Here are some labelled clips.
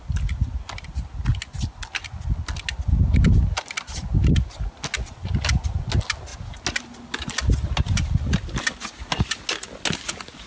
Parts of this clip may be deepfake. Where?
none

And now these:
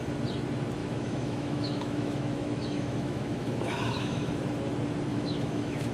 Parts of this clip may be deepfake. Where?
0.8-4.3 (autoencoder, DAC-VAE); 5.1-5.9